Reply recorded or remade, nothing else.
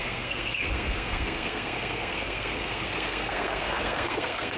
remade